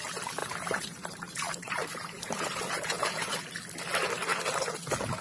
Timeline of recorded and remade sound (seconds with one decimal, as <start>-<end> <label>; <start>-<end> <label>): 0.0-0.4 recorded; 0.4-3.3 remade; 3.3-5.2 recorded